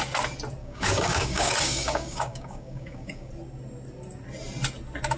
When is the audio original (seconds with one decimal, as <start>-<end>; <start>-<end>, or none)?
0.0-0.6; 3.3-5.2